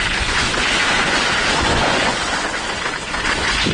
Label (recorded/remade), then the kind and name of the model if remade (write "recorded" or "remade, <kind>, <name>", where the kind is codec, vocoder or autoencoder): remade, vocoder, Vocos